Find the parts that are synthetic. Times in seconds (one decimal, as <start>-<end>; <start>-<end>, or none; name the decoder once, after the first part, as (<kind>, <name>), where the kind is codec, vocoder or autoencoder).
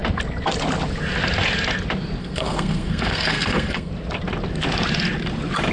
2.2-3.9 (codec, SNAC)